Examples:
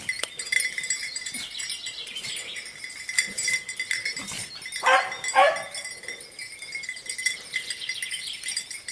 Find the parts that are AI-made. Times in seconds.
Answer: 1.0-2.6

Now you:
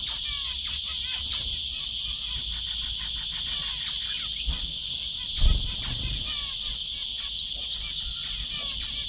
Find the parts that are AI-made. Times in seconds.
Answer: none

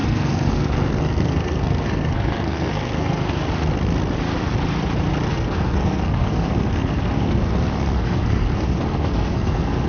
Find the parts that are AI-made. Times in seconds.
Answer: 0.0-3.5; 5.3-9.9

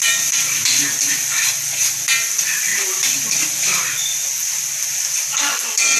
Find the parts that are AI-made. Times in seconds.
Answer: 0.0-6.0

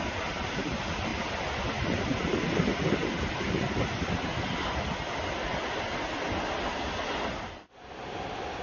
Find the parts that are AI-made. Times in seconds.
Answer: none

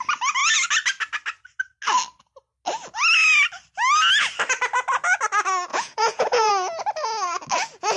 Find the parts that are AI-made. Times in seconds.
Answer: 5.7-6.5